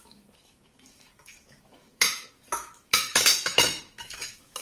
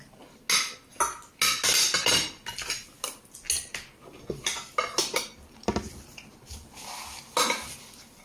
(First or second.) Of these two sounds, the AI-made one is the first